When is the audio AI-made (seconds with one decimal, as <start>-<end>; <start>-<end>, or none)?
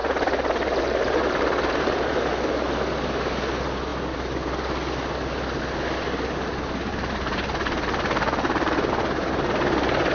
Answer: 0.0-2.5; 6.9-8.9